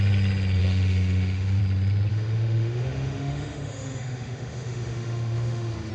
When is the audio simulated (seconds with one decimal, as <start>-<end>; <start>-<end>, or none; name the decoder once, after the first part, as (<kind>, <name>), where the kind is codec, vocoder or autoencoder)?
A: 0.6-1.6 (autoencoder, DAC-VAE); 2.1-5.9